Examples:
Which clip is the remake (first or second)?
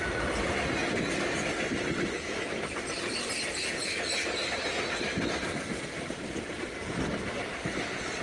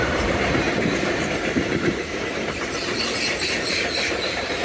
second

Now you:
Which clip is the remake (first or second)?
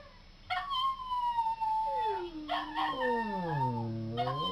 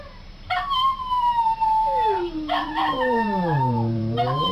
second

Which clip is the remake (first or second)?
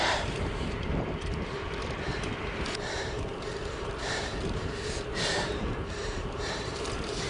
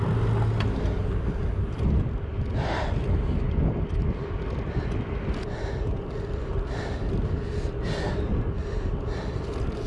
first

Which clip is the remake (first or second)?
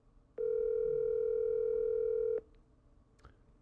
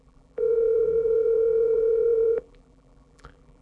second